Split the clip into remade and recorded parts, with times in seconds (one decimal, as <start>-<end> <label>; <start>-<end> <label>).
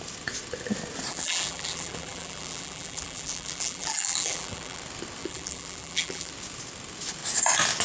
0.0-1.1 recorded; 1.1-4.8 remade; 4.8-5.2 recorded; 5.2-6.3 remade; 6.3-7.8 recorded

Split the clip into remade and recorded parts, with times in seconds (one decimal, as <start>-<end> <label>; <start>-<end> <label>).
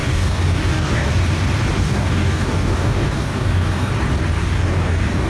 0.0-1.1 remade; 1.1-1.8 recorded; 1.8-3.9 remade; 3.9-4.4 recorded; 4.4-5.3 remade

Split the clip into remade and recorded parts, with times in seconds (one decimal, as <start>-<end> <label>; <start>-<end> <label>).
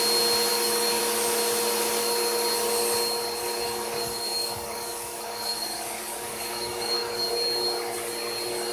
0.0-0.5 recorded; 0.5-1.0 remade; 1.0-3.4 recorded; 3.4-7.3 remade; 7.3-8.7 recorded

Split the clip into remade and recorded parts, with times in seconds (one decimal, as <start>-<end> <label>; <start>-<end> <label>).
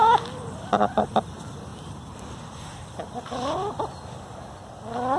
0.0-5.2 recorded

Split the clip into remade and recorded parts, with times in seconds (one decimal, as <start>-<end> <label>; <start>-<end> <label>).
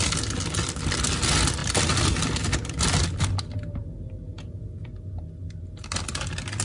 0.0-4.3 recorded; 4.3-4.9 remade; 4.9-6.6 recorded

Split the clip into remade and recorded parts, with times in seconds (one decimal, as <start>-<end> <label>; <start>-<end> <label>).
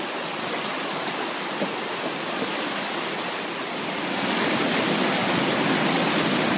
0.0-6.6 recorded